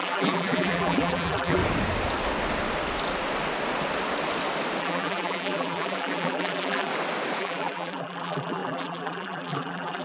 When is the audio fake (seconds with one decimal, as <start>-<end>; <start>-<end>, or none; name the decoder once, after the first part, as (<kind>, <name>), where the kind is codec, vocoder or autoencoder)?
0.0-1.6 (vocoder, BigVGAN v2); 4.8-6.9; 7.4-10.0